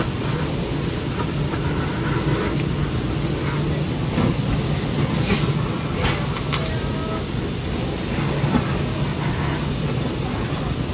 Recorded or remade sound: recorded